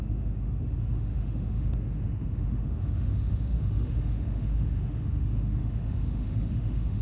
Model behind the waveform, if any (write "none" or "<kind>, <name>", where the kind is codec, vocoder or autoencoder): autoencoder, DAC-VAE